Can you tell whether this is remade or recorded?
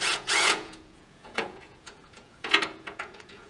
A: remade